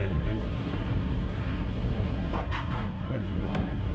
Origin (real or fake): fake